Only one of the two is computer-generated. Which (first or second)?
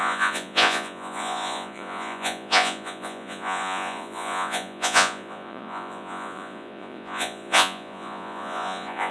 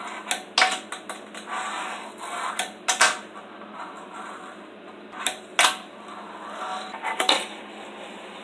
first